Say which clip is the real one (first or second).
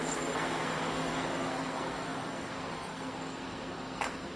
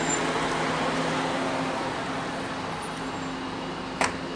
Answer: second